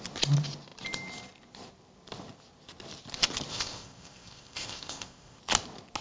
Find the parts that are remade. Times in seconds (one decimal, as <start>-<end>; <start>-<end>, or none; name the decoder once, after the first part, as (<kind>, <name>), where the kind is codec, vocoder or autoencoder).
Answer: 3.5-5.4 (codec, ZipCodec)